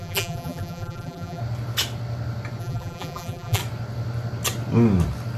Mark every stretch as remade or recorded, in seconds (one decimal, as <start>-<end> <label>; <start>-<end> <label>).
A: 0.0-1.4 remade; 1.4-2.6 recorded; 2.6-3.6 remade; 3.6-5.4 recorded